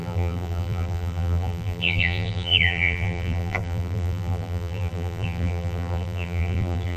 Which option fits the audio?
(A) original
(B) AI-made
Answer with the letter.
B